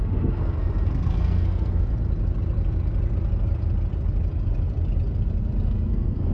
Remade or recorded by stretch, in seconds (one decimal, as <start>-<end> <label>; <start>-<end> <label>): 0.0-1.9 remade; 1.9-5.7 recorded; 5.7-6.3 remade

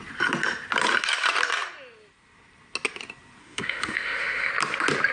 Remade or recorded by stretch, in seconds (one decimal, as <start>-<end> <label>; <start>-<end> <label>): 0.0-3.4 recorded; 3.4-4.5 remade; 4.5-5.1 recorded

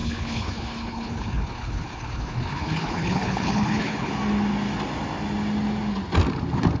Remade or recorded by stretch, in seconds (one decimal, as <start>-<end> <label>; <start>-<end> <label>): 0.0-4.1 remade; 4.1-6.8 recorded

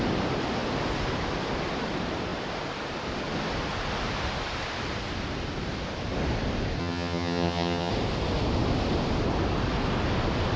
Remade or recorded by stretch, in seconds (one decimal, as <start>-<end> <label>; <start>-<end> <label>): 0.0-6.8 recorded; 6.8-7.9 remade; 7.9-10.6 recorded

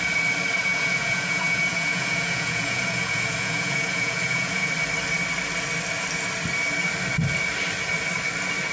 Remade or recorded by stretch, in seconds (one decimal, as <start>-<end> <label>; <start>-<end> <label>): 0.0-0.7 recorded; 0.7-4.7 remade; 4.7-8.7 recorded

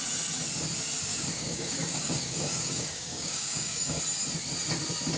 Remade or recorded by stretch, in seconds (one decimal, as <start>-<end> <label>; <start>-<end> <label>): 0.0-1.1 recorded; 1.1-4.0 remade; 4.0-5.2 recorded

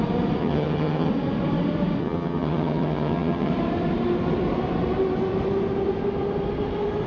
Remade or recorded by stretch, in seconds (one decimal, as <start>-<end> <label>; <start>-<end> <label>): 0.0-0.4 recorded; 0.4-1.1 remade; 1.1-2.0 recorded; 2.0-3.5 remade; 3.5-7.1 recorded